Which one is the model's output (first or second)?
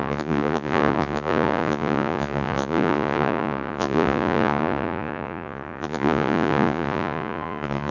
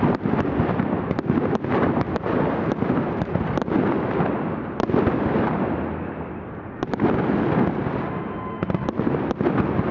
first